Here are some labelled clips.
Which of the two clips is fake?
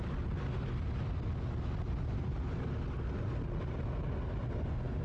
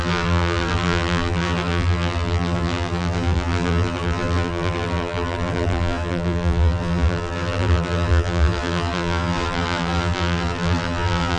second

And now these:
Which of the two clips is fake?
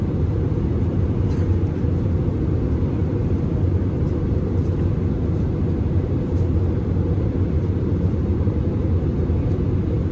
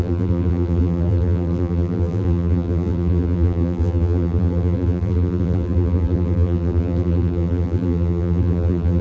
second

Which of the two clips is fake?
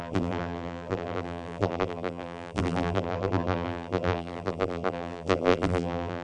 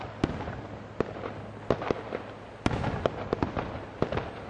first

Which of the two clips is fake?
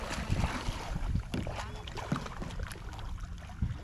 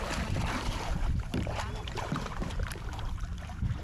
second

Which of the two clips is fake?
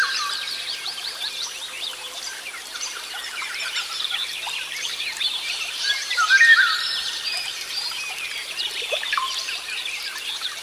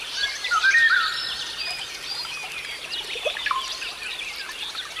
first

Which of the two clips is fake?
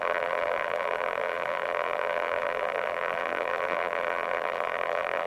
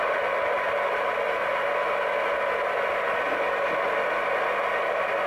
first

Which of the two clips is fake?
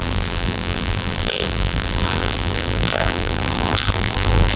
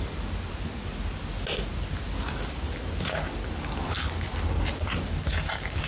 first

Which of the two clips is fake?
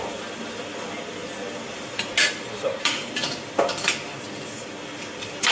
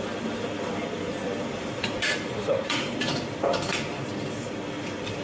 second